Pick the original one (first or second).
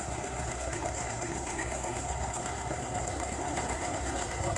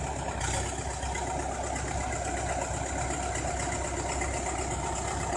second